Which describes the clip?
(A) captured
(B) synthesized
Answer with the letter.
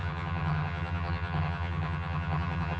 B